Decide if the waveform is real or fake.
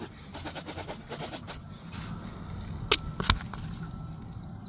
real